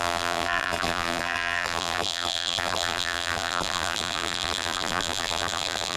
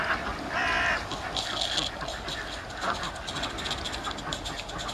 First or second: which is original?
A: second